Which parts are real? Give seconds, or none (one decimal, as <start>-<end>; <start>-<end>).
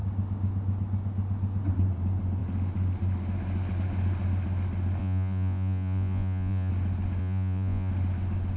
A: 0.0-5.0; 6.7-7.2; 7.9-8.6